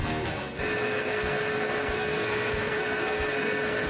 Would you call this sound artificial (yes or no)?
yes